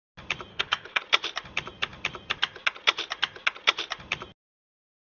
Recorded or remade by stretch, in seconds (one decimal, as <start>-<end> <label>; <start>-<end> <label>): 0.0-0.5 recorded; 0.5-1.0 remade; 1.0-5.2 recorded